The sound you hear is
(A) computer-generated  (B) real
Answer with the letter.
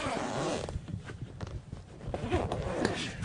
A